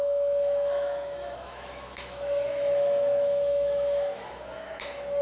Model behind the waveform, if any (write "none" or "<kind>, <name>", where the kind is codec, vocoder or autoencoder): autoencoder, DAC-VAE